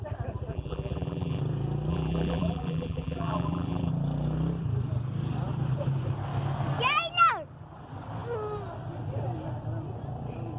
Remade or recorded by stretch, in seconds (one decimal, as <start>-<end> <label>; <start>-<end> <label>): 0.0-0.5 recorded; 0.5-1.4 remade; 1.4-1.9 recorded; 1.9-3.9 remade; 3.9-10.6 recorded